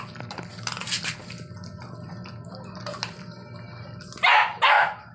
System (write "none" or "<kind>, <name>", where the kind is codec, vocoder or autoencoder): none